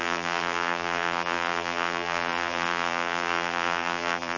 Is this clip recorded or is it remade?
remade